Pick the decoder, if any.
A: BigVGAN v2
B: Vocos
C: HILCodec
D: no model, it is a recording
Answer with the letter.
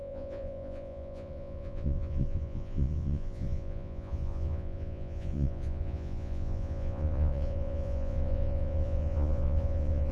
B